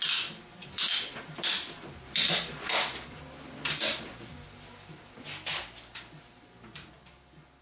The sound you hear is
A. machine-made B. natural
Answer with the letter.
B